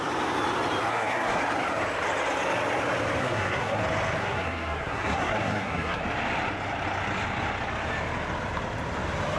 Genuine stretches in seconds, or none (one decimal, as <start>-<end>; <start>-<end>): 0.0-0.9; 1.4-3.2; 3.8-4.2; 6.0-9.4